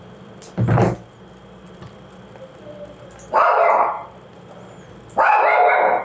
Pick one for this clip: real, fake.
real